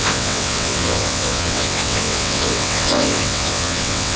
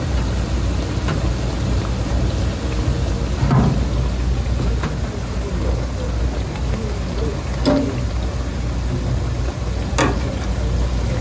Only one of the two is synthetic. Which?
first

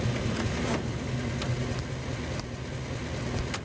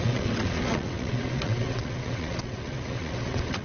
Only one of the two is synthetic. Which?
second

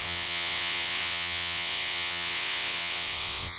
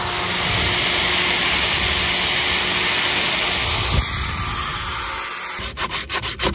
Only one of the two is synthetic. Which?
first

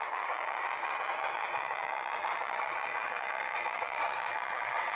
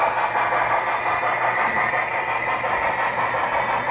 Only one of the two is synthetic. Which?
first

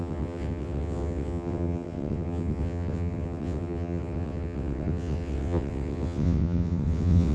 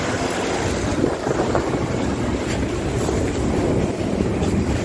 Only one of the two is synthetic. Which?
first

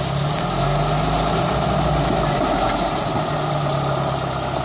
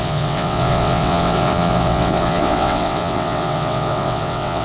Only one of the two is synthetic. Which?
second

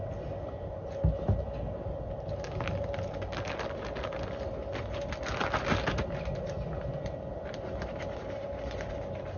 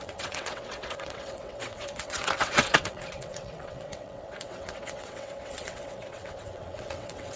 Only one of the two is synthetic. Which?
second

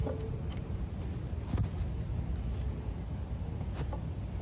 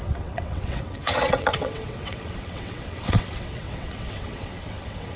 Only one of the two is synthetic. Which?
second